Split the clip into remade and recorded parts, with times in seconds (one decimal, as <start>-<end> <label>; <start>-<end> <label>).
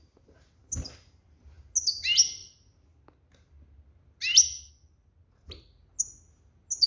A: 0.0-6.9 recorded